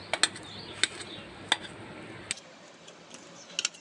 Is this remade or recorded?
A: recorded